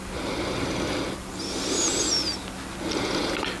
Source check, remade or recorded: recorded